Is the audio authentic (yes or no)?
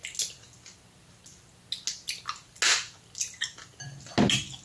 yes